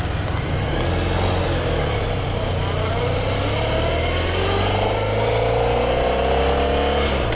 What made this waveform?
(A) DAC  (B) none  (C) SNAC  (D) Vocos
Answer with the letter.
B